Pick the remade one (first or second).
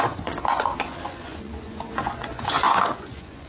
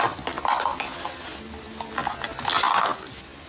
first